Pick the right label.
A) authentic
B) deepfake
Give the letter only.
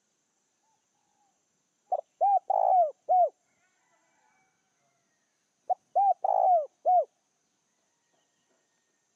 A